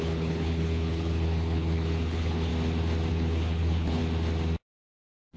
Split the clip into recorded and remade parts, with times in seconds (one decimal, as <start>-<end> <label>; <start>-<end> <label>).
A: 0.0-2.5 remade; 2.5-3.1 recorded; 3.1-4.0 remade; 4.0-5.4 recorded

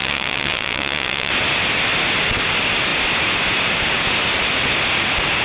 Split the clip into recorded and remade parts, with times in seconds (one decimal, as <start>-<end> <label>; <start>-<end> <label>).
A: 0.0-1.3 remade; 1.3-5.4 recorded

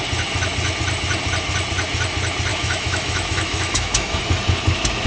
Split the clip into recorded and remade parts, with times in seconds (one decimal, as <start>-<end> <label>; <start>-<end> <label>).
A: 0.0-2.5 recorded; 2.5-4.2 remade; 4.2-5.1 recorded